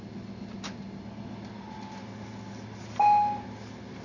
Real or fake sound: real